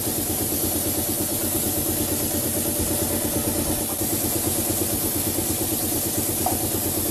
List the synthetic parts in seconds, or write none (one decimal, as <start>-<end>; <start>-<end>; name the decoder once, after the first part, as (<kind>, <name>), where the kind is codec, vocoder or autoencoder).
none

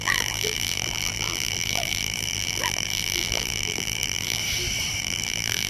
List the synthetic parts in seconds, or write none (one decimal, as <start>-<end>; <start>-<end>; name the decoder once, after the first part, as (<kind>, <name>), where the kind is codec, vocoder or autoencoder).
0.0-4.4 (vocoder, BigVGAN v2); 5.0-5.7

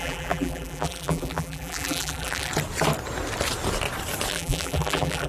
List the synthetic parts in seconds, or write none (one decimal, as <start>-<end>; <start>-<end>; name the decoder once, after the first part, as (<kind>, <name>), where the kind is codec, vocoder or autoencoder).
0.0-2.5 (vocoder, BigVGAN v2); 4.3-5.3

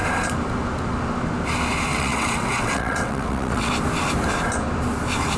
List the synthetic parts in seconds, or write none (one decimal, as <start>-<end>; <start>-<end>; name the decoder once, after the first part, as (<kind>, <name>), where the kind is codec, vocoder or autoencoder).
1.9-3.7 (vocoder, WaveNeXt)